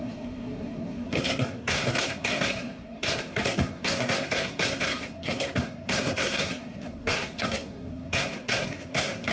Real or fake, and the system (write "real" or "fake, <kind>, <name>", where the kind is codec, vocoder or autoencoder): fake, codec, SNAC